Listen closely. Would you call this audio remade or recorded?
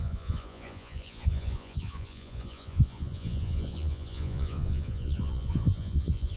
remade